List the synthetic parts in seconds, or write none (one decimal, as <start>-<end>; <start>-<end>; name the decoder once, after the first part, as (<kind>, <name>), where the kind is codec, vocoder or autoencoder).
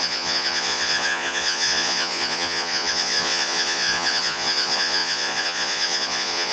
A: 0.0-6.5 (vocoder, Vocos)